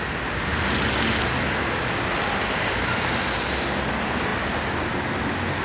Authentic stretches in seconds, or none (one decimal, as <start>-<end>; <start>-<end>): 0.0-5.6